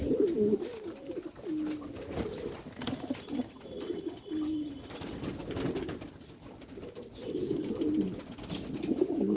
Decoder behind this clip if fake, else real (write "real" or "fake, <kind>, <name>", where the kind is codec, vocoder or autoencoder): real